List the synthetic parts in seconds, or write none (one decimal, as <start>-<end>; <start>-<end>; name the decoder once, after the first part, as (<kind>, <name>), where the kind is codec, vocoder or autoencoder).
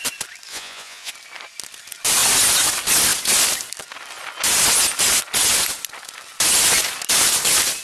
0.5-1.1 (vocoder, Vocos)